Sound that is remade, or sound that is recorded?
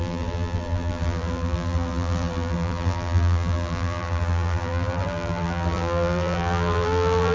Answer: remade